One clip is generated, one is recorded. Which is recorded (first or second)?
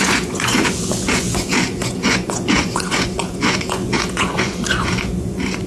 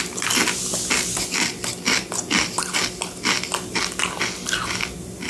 second